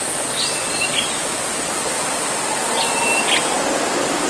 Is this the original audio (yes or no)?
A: yes